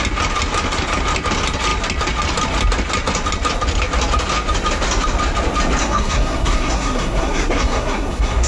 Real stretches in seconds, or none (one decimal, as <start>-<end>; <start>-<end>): 0.0-5.8